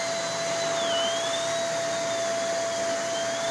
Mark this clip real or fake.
real